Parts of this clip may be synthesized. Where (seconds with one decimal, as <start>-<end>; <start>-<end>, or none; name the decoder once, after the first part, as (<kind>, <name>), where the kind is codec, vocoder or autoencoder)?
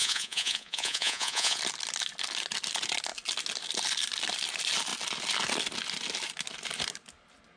0.0-1.6 (vocoder, Vocos)